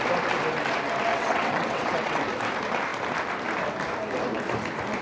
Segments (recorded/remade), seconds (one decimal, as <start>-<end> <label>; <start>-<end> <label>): 0.0-1.1 recorded; 1.1-2.2 remade; 2.2-5.0 recorded